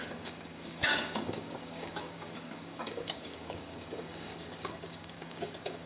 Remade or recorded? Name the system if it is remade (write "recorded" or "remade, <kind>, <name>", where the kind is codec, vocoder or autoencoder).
remade, codec, DAC